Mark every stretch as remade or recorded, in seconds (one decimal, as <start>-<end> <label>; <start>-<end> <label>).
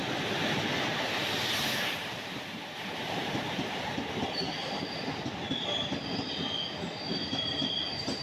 0.0-0.9 recorded; 0.9-5.3 remade; 5.3-7.2 recorded; 7.2-8.2 remade